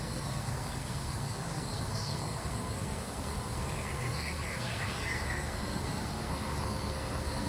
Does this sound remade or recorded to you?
remade